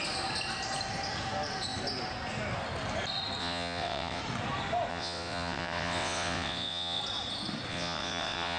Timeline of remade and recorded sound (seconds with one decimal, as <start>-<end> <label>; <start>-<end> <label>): 0.0-3.4 recorded; 3.4-4.2 remade; 4.2-4.9 recorded; 4.9-7.0 remade; 7.0-7.7 recorded; 7.7-8.6 remade